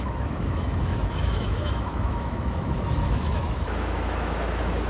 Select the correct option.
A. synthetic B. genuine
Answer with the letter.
A